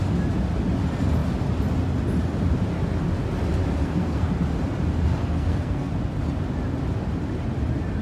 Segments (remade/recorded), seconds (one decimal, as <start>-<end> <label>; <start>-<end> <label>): 0.0-3.8 recorded; 3.8-4.3 remade; 4.3-5.2 recorded; 5.2-5.9 remade; 5.9-8.0 recorded